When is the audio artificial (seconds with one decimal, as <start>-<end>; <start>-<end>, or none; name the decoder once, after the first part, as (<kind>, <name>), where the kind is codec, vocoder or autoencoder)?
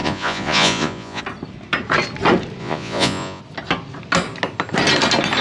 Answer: 0.0-1.2 (vocoder, Vocos); 2.6-3.4